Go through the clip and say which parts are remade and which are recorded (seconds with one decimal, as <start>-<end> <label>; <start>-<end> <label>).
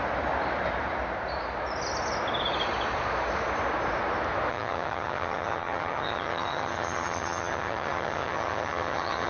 0.0-4.5 recorded; 4.5-9.3 remade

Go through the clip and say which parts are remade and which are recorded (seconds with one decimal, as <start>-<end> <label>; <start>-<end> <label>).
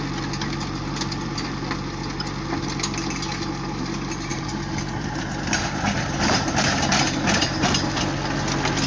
0.0-4.3 recorded; 4.3-7.7 remade; 7.7-8.9 recorded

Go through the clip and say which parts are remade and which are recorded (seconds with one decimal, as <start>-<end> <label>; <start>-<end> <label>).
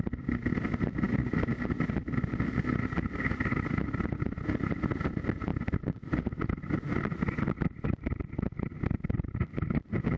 0.0-10.2 recorded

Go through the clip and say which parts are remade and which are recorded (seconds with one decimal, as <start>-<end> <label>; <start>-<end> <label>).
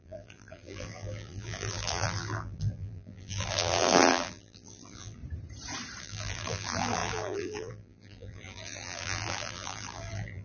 0.0-5.2 remade; 5.2-6.0 recorded; 6.0-10.4 remade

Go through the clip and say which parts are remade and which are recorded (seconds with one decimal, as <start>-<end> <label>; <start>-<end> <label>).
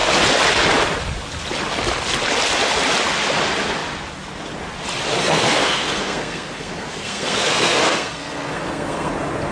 0.0-5.2 recorded; 5.2-9.1 remade; 9.1-9.5 recorded